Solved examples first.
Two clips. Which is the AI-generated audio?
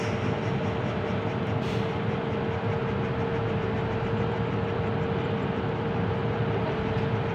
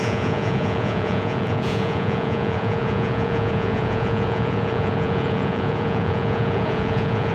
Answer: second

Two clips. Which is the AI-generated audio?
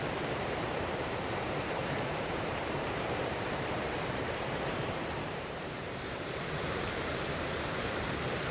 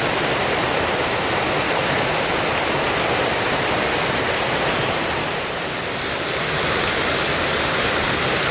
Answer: first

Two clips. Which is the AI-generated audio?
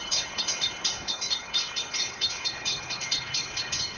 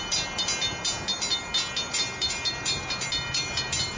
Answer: first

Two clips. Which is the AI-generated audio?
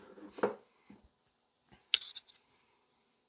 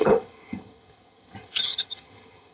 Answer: second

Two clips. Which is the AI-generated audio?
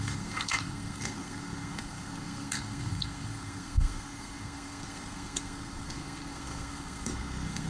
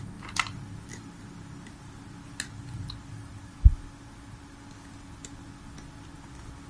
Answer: first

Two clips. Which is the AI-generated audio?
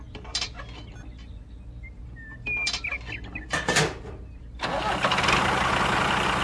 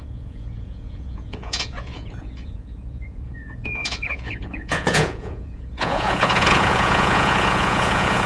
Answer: second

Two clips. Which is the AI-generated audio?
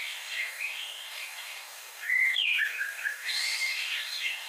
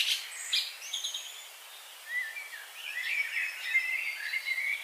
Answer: first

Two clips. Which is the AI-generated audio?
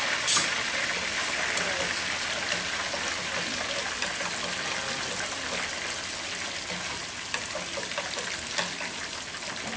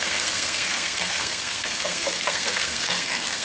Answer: second